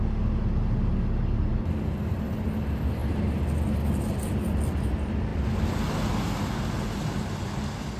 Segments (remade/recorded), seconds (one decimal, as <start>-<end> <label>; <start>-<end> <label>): 0.0-8.0 recorded